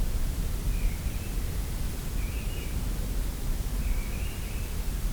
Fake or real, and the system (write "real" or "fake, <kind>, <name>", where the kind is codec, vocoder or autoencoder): fake, vocoder, BigVGAN v2